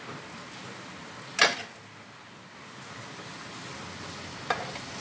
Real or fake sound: real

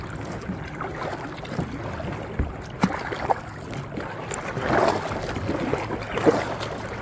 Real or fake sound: real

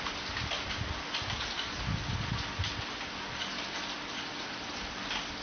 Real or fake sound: real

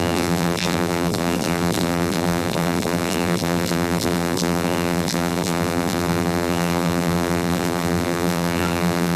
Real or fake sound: fake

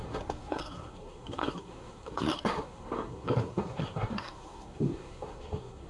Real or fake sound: fake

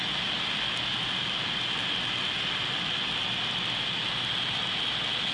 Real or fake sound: real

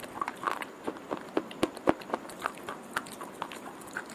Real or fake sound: real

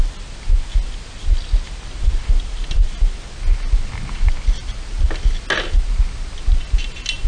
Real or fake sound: real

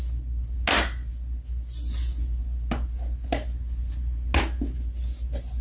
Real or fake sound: real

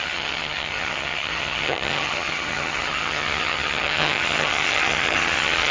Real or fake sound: fake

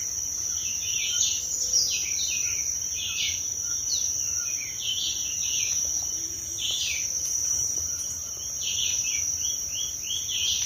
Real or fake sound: fake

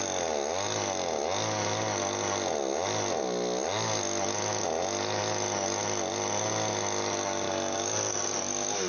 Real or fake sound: real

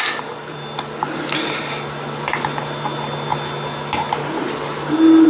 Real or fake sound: real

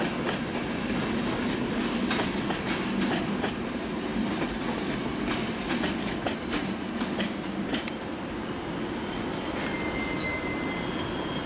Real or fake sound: real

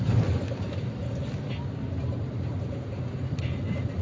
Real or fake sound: real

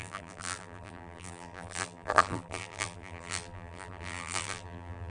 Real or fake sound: fake